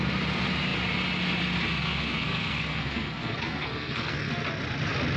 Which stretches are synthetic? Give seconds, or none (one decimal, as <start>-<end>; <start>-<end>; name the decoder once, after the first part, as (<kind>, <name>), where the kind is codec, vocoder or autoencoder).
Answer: 1.8-4.3 (codec, SNAC)